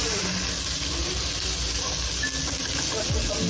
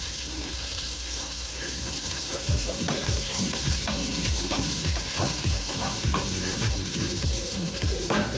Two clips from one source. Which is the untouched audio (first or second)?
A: first